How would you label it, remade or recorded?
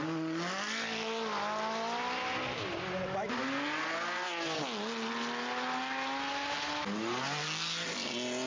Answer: recorded